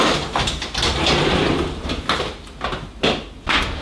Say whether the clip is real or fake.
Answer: real